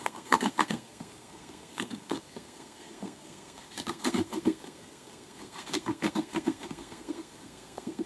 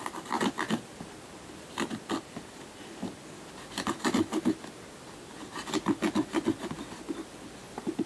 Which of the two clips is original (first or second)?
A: second